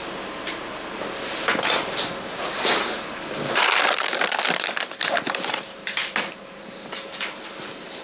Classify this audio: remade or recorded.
recorded